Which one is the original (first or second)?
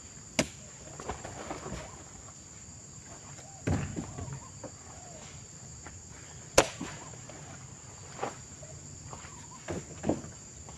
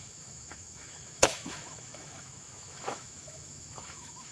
first